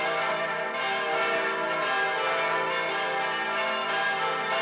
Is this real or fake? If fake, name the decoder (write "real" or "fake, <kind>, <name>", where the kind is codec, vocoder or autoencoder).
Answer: real